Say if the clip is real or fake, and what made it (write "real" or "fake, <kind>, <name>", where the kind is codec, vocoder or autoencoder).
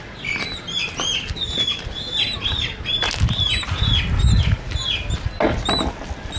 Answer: real